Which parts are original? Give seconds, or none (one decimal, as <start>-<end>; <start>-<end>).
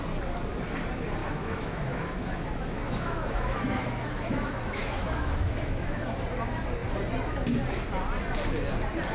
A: 0.0-1.2; 6.0-9.1